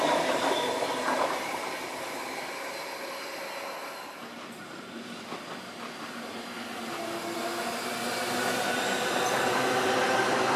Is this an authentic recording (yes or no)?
yes